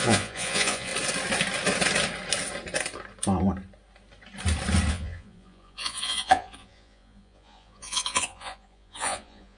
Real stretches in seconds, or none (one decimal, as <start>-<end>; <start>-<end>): 0.9-4.9